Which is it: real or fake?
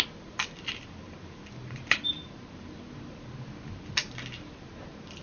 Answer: real